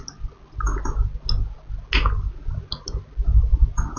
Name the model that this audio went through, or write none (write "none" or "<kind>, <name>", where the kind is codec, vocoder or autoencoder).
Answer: none